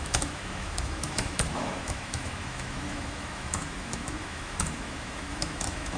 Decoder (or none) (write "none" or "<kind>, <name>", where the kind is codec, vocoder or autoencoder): autoencoder, DAC-VAE